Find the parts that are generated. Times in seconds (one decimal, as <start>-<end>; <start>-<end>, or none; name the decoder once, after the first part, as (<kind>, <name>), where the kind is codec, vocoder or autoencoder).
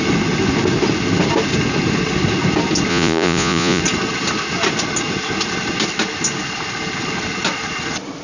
2.9-3.8 (vocoder, Vocos)